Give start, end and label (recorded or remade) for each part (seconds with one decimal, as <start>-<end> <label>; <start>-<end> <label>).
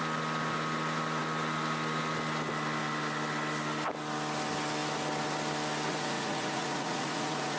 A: 0.0-5.9 recorded; 5.9-7.6 remade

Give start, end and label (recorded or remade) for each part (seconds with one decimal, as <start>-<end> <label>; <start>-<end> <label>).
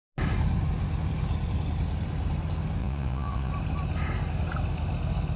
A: 0.0-2.8 recorded; 2.8-3.5 remade; 3.5-5.4 recorded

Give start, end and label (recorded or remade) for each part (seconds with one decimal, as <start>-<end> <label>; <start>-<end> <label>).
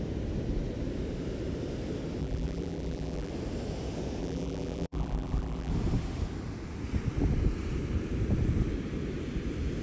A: 0.0-2.2 recorded; 2.2-3.3 remade; 3.3-4.2 recorded; 4.2-5.7 remade; 5.7-9.8 recorded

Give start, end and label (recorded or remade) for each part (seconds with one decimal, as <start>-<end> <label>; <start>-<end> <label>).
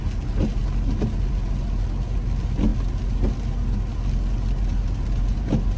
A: 0.0-5.8 recorded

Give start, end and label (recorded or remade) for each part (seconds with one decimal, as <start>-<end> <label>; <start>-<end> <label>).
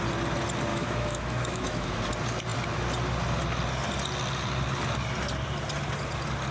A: 0.0-0.7 recorded; 0.7-2.0 remade; 2.0-6.5 recorded